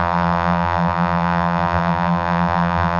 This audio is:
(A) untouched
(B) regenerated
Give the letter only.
B